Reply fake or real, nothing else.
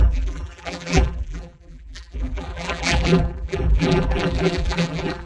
fake